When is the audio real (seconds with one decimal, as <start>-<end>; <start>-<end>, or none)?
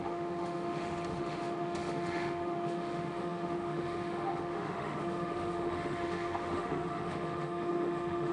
none